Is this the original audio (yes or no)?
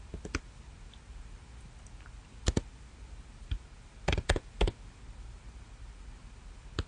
yes